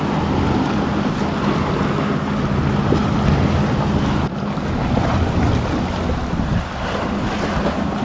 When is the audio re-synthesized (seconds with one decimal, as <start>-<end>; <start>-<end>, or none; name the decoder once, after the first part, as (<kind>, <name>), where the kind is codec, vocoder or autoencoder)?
none